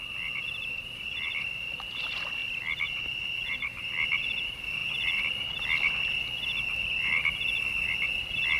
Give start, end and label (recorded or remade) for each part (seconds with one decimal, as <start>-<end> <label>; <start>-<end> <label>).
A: 0.0-2.4 remade; 2.4-3.2 recorded; 3.2-4.8 remade; 4.8-8.2 recorded; 8.2-8.6 remade